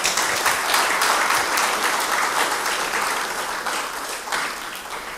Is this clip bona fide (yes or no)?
yes